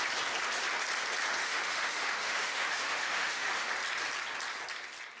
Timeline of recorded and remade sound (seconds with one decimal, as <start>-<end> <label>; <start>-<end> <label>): 0.0-1.4 recorded; 1.4-3.7 remade; 3.7-5.2 recorded